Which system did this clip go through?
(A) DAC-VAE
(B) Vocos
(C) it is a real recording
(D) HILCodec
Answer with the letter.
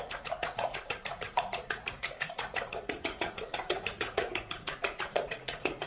B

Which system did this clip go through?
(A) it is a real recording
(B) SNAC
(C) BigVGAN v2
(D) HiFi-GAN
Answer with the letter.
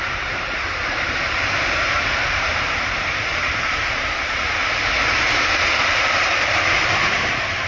C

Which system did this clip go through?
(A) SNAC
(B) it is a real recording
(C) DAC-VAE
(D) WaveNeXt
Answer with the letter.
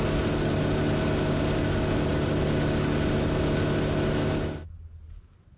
B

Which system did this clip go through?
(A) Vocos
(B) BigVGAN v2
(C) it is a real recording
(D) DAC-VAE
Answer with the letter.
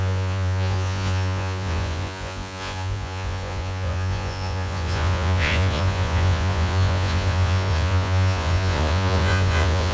A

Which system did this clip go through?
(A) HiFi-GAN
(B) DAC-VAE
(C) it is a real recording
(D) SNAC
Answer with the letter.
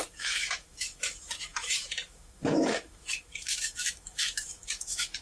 B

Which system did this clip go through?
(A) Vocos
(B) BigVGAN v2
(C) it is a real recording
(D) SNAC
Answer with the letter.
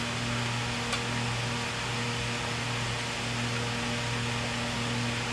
C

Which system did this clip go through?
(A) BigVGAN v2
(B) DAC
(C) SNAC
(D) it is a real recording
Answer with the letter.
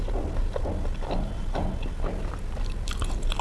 D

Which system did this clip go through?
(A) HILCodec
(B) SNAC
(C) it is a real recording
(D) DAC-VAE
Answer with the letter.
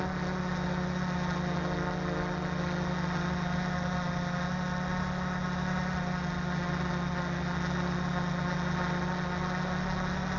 C